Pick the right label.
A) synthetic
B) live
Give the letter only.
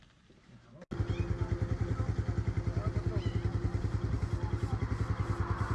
B